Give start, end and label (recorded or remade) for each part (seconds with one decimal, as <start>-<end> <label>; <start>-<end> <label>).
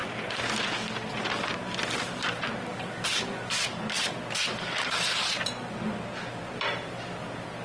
0.0-2.7 recorded; 2.7-4.1 remade; 4.1-4.5 recorded; 4.5-5.0 remade; 5.0-7.6 recorded